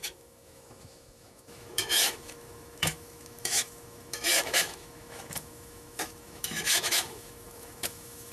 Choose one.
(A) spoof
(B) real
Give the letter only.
A